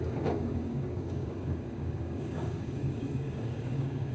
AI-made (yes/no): yes